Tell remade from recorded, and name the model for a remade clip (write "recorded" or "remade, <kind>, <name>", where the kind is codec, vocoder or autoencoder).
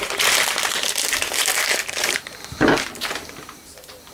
remade, vocoder, BigVGAN v2